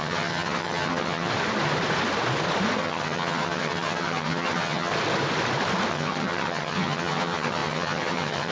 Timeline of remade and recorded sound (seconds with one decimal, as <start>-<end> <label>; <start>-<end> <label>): 0.0-1.3 remade; 1.3-2.8 recorded; 2.8-4.9 remade; 4.9-5.9 recorded; 5.9-8.5 remade